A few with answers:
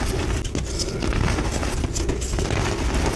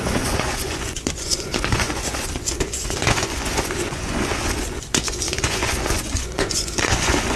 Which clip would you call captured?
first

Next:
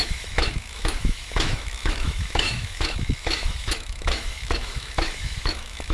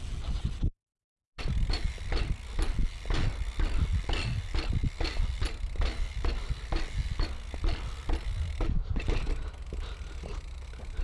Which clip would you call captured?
second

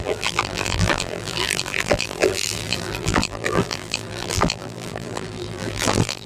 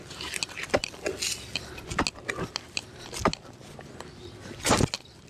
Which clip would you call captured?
second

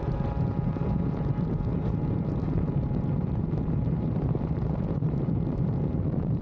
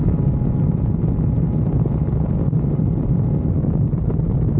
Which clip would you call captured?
second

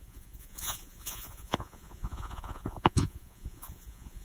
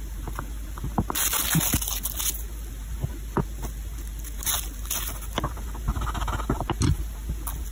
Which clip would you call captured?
second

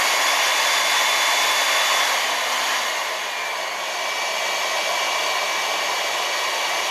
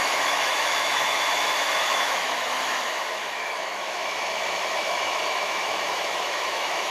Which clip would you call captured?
first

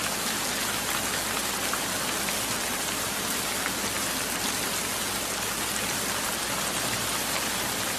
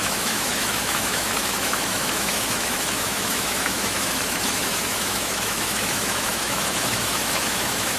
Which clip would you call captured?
first